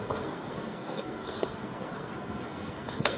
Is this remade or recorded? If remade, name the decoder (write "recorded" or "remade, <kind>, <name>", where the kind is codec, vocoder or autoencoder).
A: remade, codec, SNAC